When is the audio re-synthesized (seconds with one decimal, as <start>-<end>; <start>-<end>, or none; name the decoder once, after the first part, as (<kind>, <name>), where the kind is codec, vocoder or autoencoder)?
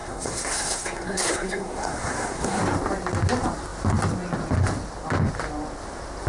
0.0-2.6 (codec, SNAC)